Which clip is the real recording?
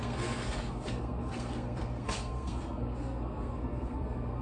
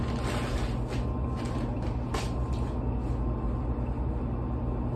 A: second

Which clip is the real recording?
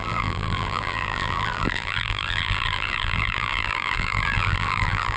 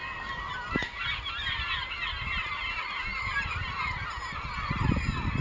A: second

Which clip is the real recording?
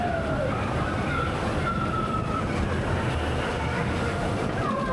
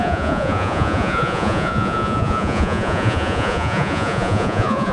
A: first